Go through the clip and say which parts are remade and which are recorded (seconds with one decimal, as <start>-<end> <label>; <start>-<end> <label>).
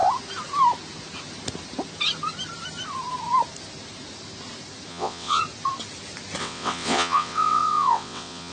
0.0-4.9 recorded; 4.9-5.4 remade; 5.4-6.4 recorded; 6.4-8.5 remade